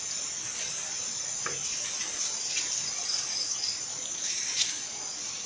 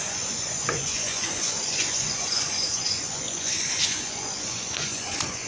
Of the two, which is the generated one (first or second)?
second